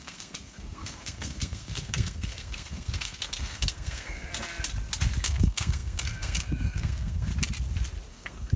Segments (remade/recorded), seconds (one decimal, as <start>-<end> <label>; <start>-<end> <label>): 0.0-4.3 remade; 4.3-5.2 recorded; 5.2-7.3 remade; 7.3-8.1 recorded; 8.1-8.6 remade